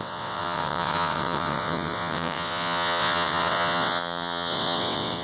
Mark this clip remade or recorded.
remade